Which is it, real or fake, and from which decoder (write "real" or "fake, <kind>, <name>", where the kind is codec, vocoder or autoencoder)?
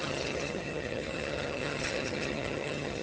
fake, vocoder, HiFi-GAN